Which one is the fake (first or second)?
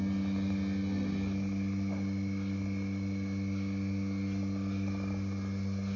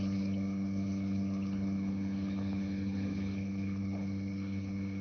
second